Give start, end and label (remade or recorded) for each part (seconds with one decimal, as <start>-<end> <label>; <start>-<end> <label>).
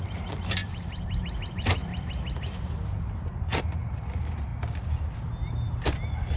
0.0-1.9 remade; 1.9-3.6 recorded; 3.6-4.5 remade; 4.5-5.5 recorded; 5.5-6.4 remade